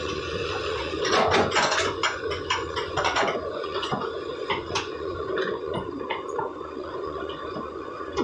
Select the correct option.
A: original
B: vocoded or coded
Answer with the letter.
B